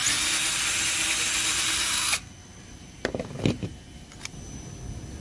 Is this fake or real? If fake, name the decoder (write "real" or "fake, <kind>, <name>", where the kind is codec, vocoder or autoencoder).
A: real